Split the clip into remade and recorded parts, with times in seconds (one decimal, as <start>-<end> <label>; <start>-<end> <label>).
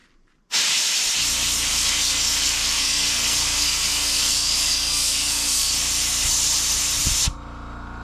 0.0-1.7 recorded; 1.7-5.7 remade; 5.7-8.0 recorded